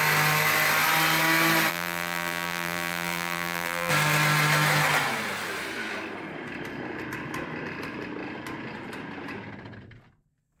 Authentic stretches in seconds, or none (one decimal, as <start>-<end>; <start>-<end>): 0.0-1.7; 3.9-10.6